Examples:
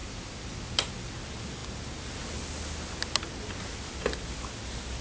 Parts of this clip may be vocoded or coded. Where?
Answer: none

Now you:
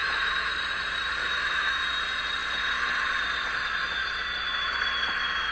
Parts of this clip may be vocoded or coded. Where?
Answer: 0.0-0.5 (autoencoder, DAC-VAE); 1.2-1.8

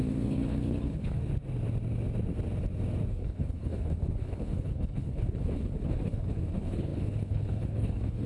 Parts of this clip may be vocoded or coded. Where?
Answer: 0.0-1.2 (codec, HILCodec); 3.1-8.3

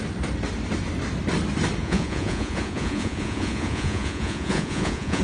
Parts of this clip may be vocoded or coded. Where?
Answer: 1.8-5.2 (vocoder, Vocos)

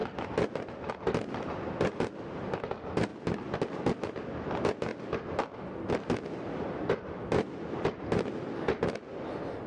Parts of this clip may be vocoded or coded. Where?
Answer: none